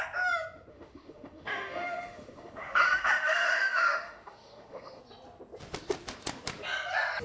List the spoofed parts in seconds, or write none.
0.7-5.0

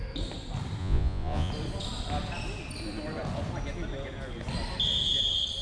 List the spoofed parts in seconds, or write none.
0.8-1.5

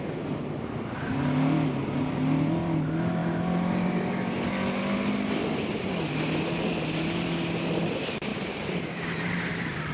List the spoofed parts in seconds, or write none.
none

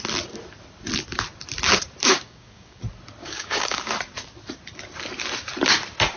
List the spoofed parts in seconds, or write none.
2.1-2.8; 3.2-3.9

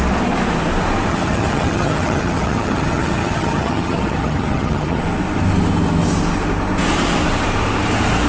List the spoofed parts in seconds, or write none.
1.1-5.0